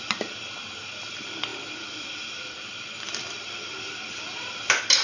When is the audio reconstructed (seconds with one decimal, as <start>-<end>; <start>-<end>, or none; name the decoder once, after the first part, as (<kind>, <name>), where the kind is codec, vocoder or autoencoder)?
none